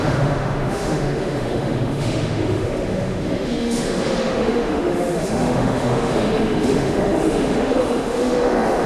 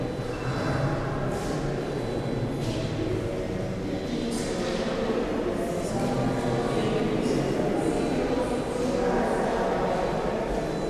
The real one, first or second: second